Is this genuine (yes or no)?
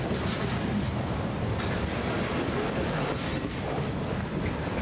yes